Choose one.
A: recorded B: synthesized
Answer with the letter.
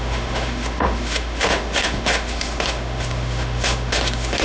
B